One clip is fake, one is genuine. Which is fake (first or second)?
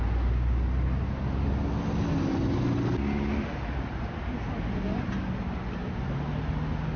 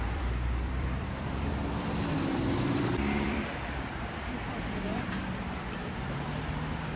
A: second